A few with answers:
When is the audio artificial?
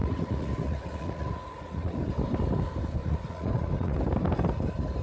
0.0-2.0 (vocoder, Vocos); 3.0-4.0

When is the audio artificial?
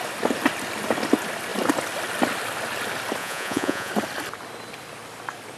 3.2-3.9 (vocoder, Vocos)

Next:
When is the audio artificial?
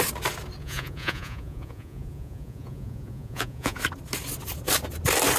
0.6-3.8 (vocoder, Vocos)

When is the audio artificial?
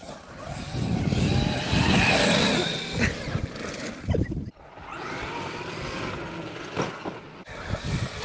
none